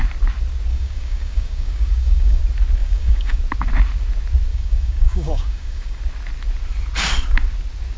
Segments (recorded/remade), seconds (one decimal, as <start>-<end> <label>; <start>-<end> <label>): 0.0-0.7 recorded; 0.7-2.4 remade; 2.4-2.8 recorded; 2.8-3.4 remade; 3.4-4.5 recorded; 4.5-6.0 remade; 6.0-8.0 recorded